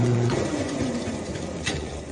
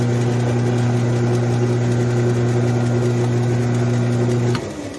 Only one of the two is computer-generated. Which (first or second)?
first